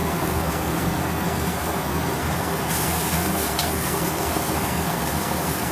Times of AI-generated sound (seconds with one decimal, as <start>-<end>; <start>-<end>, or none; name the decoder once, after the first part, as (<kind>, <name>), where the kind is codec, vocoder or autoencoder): 0.0-5.7 (codec, SNAC)